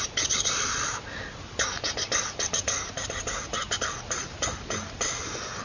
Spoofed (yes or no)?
no